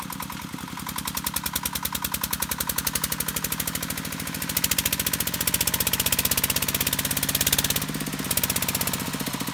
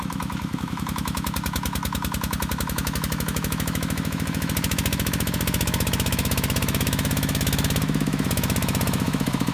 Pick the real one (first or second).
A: first